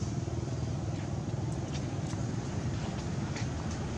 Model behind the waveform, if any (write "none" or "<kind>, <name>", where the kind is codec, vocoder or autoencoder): vocoder, BigVGAN v2